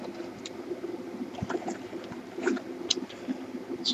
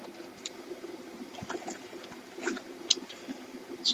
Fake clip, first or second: second